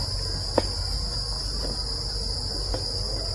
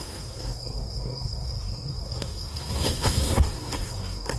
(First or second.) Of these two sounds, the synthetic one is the second